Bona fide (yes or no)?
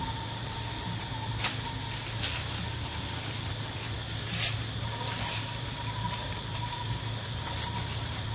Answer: yes